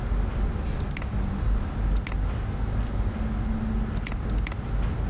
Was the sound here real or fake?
real